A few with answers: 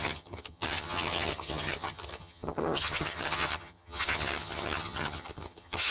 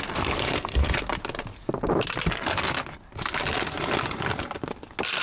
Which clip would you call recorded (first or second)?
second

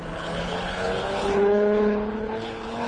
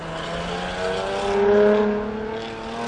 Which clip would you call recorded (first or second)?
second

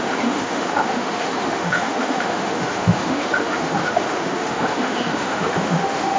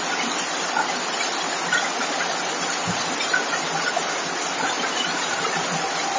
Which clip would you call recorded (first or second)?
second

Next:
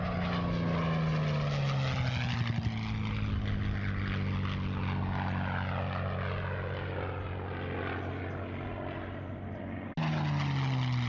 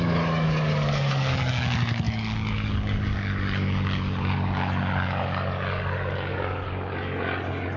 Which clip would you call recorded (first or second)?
first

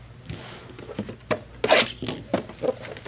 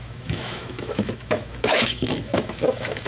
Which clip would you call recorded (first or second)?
first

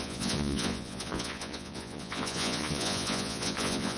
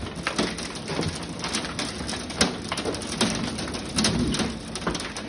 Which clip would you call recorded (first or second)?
second